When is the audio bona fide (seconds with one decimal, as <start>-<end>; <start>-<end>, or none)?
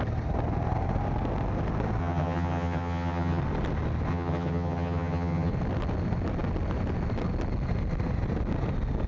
0.0-2.0; 3.4-4.1; 5.5-9.1